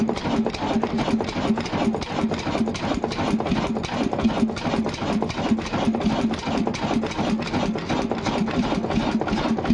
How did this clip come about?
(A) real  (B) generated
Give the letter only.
A